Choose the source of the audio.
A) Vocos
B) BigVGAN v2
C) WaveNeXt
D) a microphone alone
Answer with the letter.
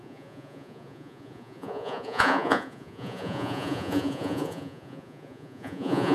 A